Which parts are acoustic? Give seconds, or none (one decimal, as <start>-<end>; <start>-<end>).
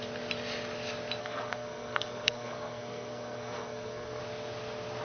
0.0-1.2; 4.2-5.0